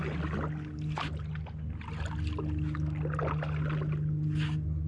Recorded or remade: recorded